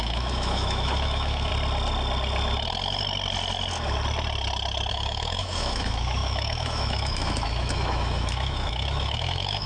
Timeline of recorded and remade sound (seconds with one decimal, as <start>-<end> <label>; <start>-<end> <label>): 0.0-1.5 remade; 1.5-4.9 recorded; 4.9-9.7 remade